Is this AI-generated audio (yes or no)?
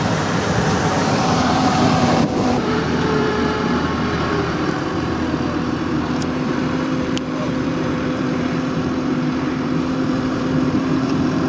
yes